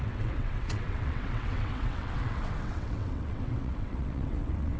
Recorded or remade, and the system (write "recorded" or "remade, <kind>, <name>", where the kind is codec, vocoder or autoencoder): remade, vocoder, WaveNeXt